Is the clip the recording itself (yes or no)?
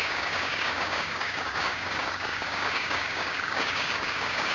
no